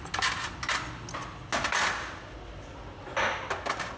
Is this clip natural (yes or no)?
yes